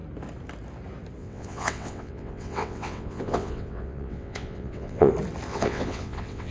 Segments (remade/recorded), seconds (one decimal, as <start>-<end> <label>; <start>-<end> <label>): 0.0-1.2 recorded; 1.2-5.1 remade; 5.1-5.5 recorded; 5.5-6.5 remade